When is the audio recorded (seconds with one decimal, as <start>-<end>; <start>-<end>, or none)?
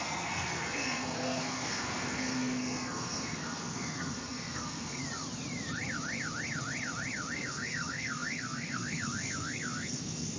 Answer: 5.0-7.3